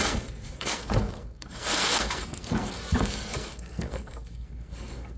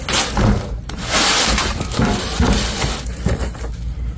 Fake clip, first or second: first